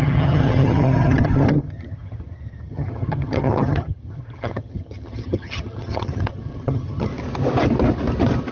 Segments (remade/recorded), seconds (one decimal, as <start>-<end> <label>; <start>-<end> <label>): 0.0-7.1 remade; 7.1-8.5 recorded